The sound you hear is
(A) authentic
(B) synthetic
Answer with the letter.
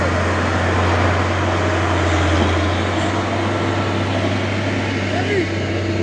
A